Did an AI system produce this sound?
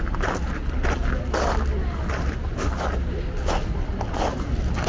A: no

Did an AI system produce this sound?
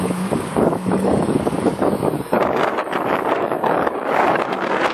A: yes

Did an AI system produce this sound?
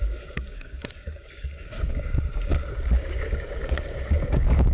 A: yes